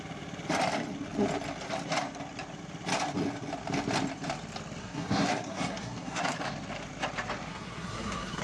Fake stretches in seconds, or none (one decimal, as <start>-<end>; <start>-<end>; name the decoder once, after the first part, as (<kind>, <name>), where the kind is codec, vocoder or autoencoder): 4.8-6.2 (codec, SNAC); 7.5-8.4